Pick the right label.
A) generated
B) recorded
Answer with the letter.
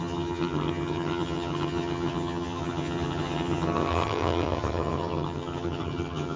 A